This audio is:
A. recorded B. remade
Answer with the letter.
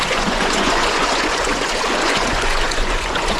B